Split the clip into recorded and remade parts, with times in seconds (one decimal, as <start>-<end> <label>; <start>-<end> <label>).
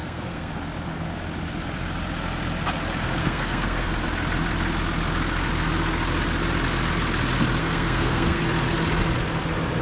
0.0-0.5 remade; 0.5-3.2 recorded; 3.2-3.9 remade; 3.9-7.6 recorded; 7.6-8.4 remade; 8.4-9.8 recorded